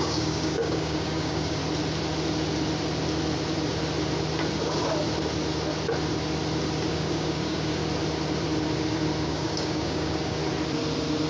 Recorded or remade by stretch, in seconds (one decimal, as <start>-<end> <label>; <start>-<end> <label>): 0.0-1.6 remade; 1.6-6.9 recorded; 6.9-7.8 remade; 7.8-9.2 recorded; 9.2-10.4 remade; 10.4-11.3 recorded